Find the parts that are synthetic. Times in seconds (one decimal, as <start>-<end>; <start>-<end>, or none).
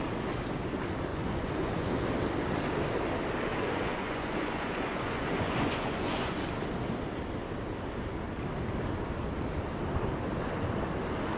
1.1-1.9; 3.5-6.5